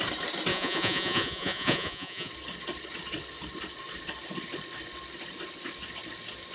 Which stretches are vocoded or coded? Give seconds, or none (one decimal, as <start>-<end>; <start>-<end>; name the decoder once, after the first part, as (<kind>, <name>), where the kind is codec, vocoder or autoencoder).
0.5-2.3 (vocoder, Vocos)